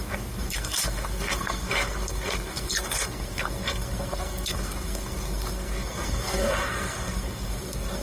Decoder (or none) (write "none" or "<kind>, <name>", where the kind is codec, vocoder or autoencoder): codec, SNAC